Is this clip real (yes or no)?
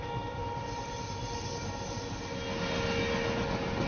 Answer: yes